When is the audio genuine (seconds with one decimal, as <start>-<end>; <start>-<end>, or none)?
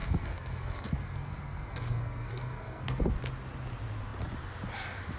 3.1-5.2